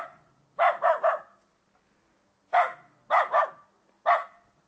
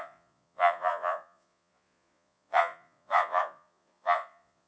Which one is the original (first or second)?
first